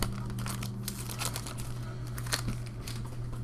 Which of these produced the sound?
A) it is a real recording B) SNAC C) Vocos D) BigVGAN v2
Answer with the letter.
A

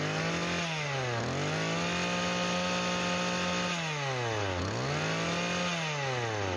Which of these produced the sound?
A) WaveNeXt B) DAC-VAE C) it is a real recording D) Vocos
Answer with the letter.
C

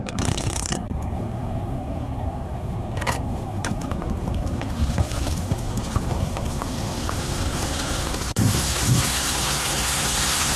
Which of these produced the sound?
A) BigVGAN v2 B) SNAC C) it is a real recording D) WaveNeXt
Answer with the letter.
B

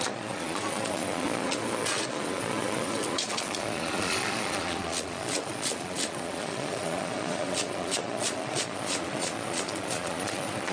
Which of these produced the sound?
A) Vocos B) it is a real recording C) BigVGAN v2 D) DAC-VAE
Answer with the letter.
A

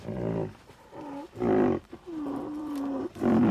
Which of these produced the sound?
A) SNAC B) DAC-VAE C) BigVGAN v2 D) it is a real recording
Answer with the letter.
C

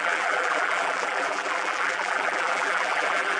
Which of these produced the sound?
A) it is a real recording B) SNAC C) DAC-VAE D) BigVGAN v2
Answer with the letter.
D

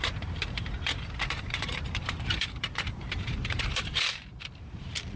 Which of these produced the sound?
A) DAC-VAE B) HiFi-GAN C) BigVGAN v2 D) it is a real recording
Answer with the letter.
C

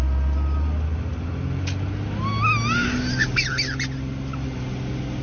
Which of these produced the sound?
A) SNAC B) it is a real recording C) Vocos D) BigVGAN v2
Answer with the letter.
B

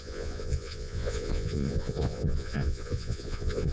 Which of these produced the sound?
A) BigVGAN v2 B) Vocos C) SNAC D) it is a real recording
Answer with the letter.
B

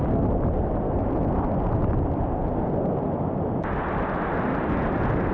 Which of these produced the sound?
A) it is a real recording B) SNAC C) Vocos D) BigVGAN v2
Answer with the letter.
A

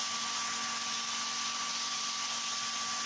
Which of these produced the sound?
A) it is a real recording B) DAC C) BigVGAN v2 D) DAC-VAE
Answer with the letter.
A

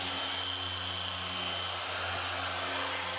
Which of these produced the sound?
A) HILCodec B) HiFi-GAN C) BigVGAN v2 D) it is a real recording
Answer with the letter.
D